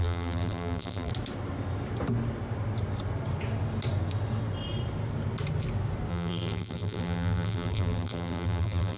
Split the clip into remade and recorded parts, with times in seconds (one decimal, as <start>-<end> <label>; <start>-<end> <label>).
0.0-1.1 remade; 1.1-6.1 recorded; 6.1-9.0 remade